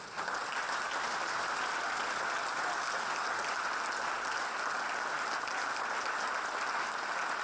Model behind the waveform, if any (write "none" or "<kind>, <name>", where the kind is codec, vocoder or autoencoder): none